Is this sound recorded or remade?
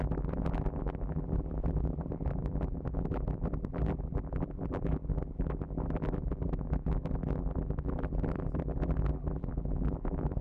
remade